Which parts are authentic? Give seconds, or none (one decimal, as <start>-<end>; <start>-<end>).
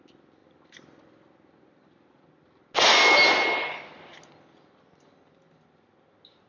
0.0-6.5